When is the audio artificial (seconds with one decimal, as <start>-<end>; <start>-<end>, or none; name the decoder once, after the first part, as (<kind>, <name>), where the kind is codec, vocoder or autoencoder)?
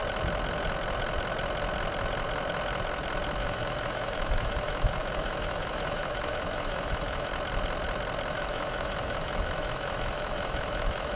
3.4-7.3 (autoencoder, DAC-VAE); 8.3-11.2